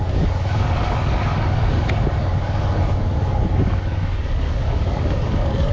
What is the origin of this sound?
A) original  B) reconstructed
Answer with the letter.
B